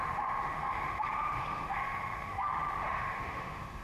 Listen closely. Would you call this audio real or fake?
fake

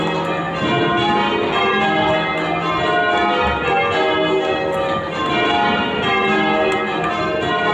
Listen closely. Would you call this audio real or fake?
real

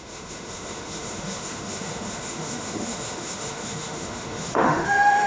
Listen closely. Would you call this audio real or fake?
fake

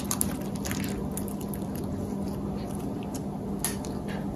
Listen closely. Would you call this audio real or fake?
real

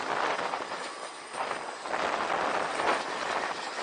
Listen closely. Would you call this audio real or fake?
real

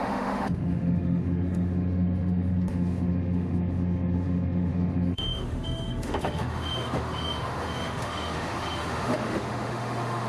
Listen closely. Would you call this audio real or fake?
fake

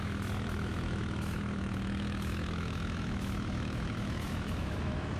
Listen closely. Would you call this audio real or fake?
fake